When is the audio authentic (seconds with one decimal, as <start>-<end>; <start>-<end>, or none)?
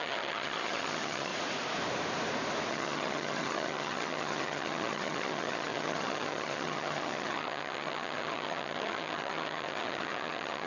1.3-2.7